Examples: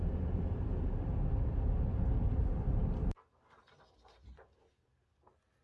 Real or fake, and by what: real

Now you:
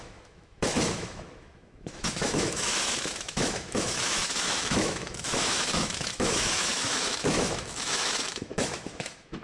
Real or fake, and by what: fake, autoencoder, DAC-VAE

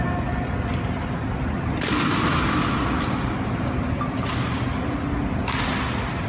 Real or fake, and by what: real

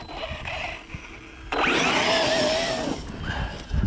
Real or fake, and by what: real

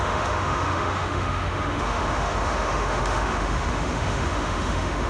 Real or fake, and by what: fake, autoencoder, DAC-VAE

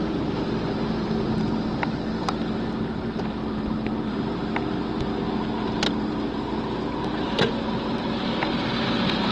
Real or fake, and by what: real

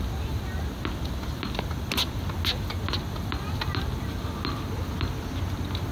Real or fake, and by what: real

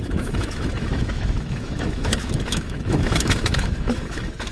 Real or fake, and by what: fake, autoencoder, DAC-VAE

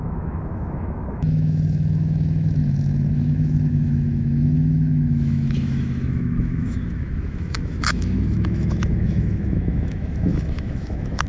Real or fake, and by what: fake, autoencoder, DAC-VAE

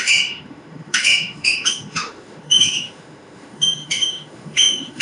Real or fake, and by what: fake, autoencoder, DAC-VAE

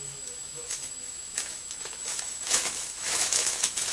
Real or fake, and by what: fake, autoencoder, DAC-VAE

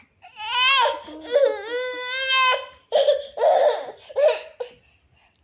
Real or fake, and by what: real